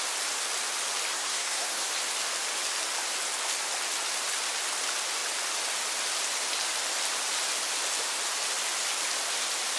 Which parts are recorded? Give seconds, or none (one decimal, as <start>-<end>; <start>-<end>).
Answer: 0.0-1.1; 1.9-9.8